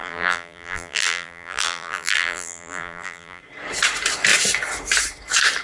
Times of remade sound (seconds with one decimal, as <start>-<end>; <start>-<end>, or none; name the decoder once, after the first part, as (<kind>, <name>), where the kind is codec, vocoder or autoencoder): 0.0-3.4 (vocoder, BigVGAN v2)